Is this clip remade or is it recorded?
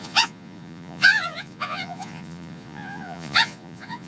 remade